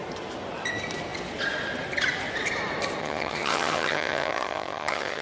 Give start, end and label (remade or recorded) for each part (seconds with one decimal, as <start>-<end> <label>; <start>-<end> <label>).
0.0-3.0 recorded; 3.0-5.2 remade